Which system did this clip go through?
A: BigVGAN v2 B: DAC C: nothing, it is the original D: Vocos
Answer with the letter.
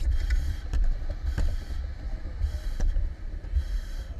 A